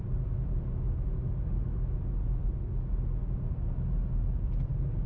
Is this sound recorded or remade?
recorded